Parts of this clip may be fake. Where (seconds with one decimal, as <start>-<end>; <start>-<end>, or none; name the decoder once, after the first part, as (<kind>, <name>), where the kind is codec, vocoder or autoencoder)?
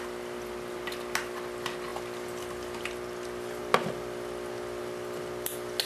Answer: none